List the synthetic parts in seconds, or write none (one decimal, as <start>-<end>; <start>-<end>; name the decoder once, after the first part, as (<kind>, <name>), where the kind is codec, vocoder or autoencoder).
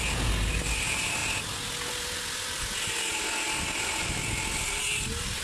none